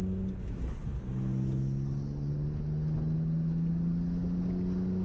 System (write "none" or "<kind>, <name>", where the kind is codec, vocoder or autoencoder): none